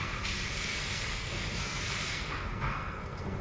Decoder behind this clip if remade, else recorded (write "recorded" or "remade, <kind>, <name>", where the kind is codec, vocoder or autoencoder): remade, codec, SNAC